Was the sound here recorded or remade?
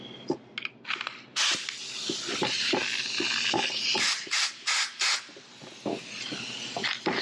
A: recorded